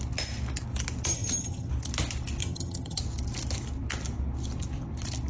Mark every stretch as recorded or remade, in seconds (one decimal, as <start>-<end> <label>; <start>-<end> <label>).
0.0-1.1 recorded; 1.1-1.7 remade; 1.7-2.4 recorded; 2.4-3.0 remade; 3.0-5.3 recorded